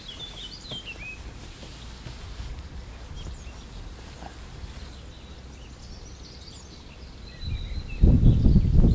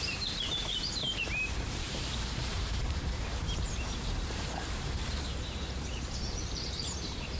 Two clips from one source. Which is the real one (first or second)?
first